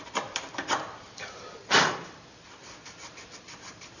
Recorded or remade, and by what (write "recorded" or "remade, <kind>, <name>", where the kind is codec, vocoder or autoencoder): recorded